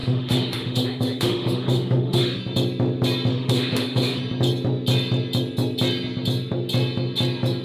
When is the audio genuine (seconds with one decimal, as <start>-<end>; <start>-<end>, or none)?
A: 2.4-3.3; 4.2-7.6